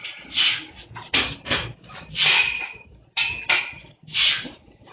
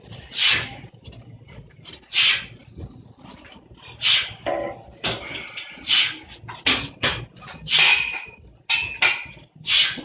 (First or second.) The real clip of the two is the second